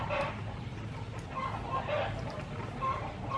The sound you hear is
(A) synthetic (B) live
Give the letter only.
B